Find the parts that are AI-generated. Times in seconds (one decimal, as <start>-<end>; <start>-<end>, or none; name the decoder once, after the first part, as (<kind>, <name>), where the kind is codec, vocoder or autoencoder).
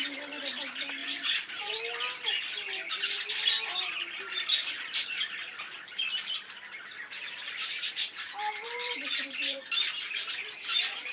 1.0-1.8 (vocoder, BigVGAN v2); 4.6-9.6